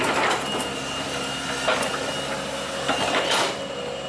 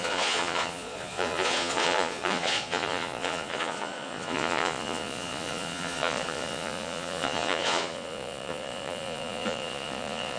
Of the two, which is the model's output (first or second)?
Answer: second